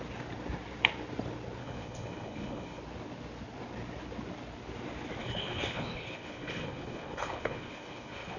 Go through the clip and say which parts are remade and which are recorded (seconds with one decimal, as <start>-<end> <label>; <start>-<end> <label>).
0.0-1.6 recorded; 1.6-2.8 remade; 2.8-5.2 recorded; 5.2-8.4 remade